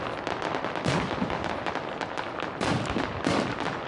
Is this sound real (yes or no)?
no